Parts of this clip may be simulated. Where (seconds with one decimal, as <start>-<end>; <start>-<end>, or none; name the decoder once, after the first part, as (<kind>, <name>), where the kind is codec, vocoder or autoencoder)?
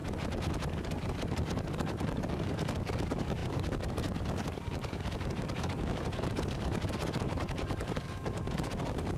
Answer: 0.7-9.2 (codec, DAC)